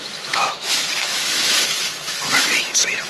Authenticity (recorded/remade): remade